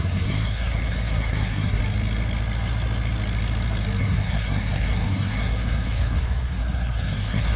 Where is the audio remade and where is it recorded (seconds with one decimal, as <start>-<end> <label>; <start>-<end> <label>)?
0.0-1.8 remade; 1.8-4.0 recorded; 4.0-7.6 remade

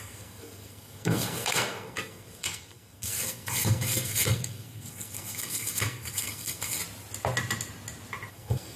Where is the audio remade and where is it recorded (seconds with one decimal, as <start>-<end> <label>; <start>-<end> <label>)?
0.0-6.8 remade; 6.8-8.3 recorded; 8.3-8.8 remade

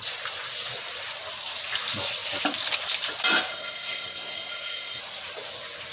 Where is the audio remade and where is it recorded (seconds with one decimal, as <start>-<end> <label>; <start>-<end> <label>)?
0.0-3.5 recorded; 3.5-5.0 remade; 5.0-5.9 recorded